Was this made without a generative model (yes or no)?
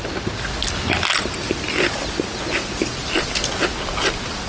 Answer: yes